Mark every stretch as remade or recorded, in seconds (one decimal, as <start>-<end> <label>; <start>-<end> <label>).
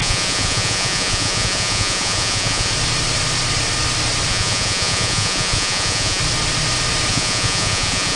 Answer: 0.0-2.7 remade; 2.7-4.3 recorded; 4.3-6.2 remade; 6.2-7.1 recorded; 7.1-8.2 remade